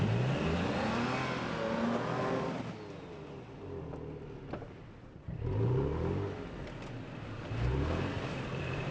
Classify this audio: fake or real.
real